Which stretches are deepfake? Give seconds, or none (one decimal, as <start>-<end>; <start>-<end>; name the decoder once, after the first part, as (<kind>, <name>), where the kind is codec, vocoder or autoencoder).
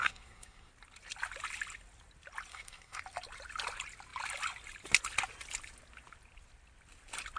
0.0-0.7 (codec, SNAC); 2.5-3.0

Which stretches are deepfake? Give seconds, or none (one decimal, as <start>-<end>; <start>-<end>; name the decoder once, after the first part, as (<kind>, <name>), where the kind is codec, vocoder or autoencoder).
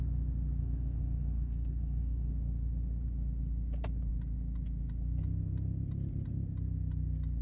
0.6-2.3 (codec, SNAC)